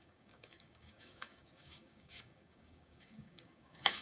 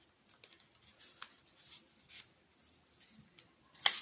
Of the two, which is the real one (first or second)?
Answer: second